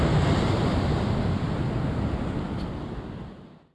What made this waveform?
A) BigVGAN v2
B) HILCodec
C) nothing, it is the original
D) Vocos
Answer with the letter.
C